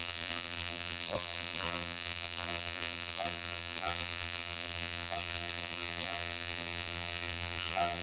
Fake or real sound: fake